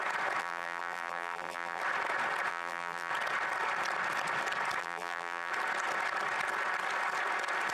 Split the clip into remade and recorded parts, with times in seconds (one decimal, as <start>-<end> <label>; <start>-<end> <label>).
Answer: 0.0-0.4 recorded; 0.4-1.8 remade; 1.8-2.5 recorded; 2.5-3.1 remade; 3.1-4.8 recorded; 4.8-5.5 remade; 5.5-7.7 recorded